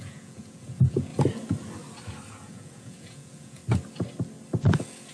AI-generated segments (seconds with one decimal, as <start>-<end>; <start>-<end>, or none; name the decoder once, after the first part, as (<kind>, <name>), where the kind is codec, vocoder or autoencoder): 0.0-1.1 (vocoder, Vocos); 2.3-3.6